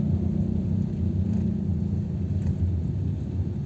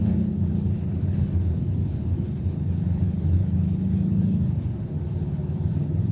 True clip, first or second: first